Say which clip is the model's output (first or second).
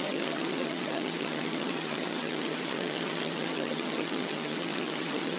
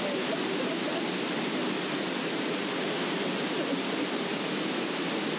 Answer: first